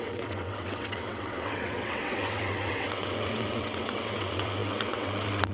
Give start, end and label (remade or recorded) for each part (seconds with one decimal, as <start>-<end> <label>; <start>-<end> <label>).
0.0-5.5 remade